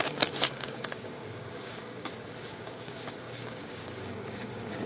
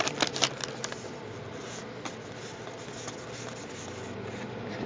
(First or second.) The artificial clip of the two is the first